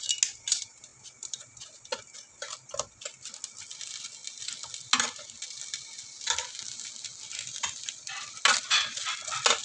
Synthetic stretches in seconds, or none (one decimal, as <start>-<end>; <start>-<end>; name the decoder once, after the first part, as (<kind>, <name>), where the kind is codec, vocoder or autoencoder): none